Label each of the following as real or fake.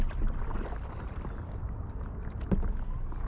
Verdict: fake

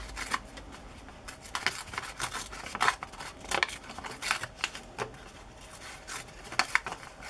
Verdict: real